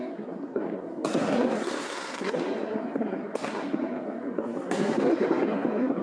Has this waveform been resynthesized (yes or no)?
yes